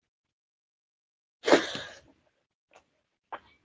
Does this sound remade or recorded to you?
recorded